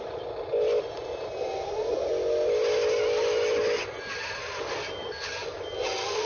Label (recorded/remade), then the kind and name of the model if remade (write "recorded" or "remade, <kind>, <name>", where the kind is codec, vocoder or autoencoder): recorded